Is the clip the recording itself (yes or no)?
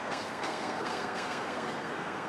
no